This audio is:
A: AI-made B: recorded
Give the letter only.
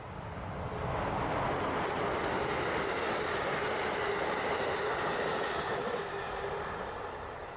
B